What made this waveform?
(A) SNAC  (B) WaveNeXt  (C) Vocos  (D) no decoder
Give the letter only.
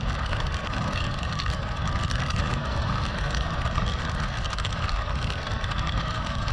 A